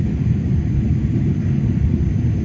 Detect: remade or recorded recorded